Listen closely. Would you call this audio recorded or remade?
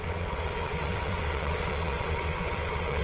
remade